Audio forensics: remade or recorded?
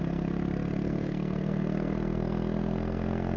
remade